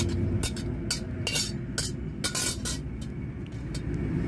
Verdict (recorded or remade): recorded